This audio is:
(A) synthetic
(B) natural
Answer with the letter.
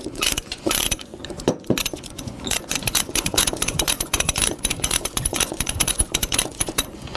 A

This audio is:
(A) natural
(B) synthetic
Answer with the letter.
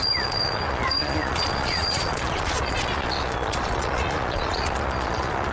B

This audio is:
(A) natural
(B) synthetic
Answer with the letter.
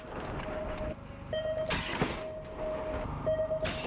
A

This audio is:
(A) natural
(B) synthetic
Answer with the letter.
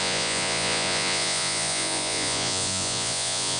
B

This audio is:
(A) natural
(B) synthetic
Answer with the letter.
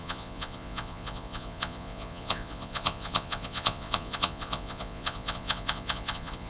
B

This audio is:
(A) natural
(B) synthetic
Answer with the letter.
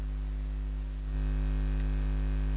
A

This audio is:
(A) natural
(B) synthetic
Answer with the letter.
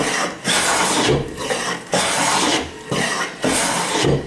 A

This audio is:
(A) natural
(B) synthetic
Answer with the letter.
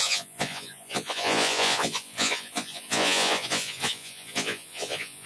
B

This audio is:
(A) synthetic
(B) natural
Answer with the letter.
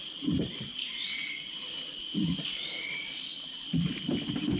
B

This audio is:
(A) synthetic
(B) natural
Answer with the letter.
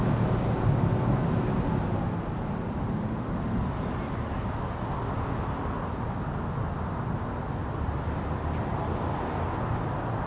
B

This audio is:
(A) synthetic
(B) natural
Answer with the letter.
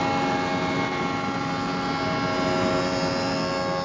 B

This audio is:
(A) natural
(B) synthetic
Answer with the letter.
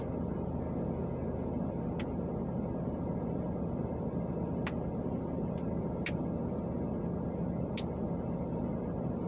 A